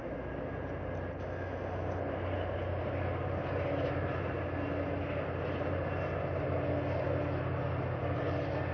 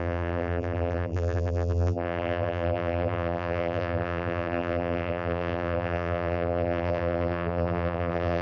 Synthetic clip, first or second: second